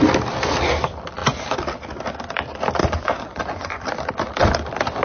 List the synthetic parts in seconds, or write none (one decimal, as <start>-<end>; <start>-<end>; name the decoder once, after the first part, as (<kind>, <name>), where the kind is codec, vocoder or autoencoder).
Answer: 2.8-3.8 (vocoder, Vocos)